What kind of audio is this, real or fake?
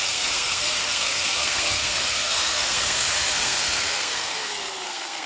fake